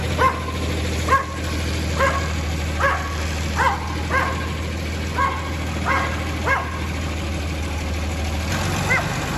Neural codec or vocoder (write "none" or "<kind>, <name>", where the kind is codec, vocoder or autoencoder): none